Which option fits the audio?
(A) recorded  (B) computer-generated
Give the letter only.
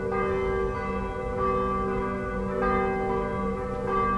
A